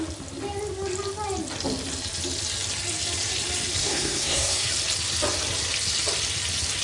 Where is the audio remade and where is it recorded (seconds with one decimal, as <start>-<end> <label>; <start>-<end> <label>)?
0.0-3.8 recorded; 3.8-4.7 remade; 4.7-6.8 recorded